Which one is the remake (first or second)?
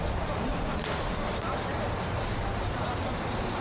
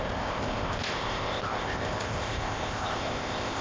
second